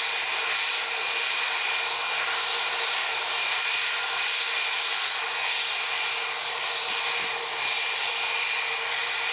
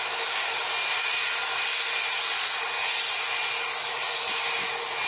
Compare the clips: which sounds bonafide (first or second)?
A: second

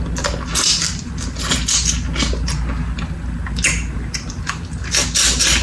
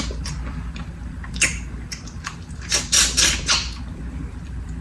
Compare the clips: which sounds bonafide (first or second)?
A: first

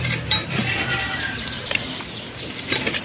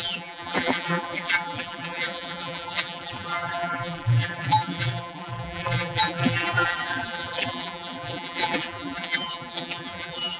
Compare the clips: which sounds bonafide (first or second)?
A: first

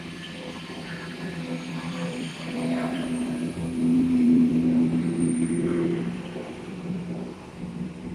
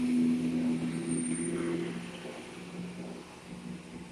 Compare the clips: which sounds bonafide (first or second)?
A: second